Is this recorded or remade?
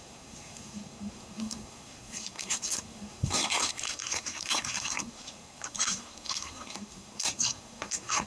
remade